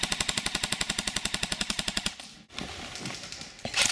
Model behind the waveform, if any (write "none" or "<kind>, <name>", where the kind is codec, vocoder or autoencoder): none